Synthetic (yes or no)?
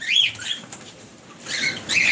yes